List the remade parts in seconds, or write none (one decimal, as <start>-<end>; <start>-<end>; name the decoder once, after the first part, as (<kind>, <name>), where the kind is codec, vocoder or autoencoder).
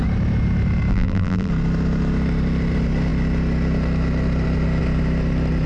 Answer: 0.9-1.5 (vocoder, BigVGAN v2)